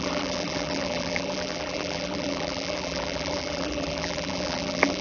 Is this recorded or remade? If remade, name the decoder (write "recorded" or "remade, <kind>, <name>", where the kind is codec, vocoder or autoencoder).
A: remade, vocoder, BigVGAN v2